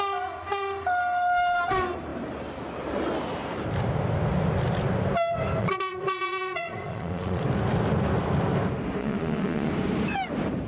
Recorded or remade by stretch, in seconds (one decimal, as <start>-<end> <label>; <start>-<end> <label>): 0.0-5.6 recorded; 5.6-7.4 remade; 7.4-9.0 recorded; 9.0-9.7 remade; 9.7-10.7 recorded